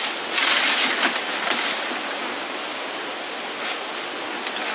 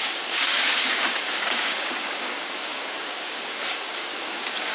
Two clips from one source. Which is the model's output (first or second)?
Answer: second